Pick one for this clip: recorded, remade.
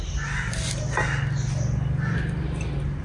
recorded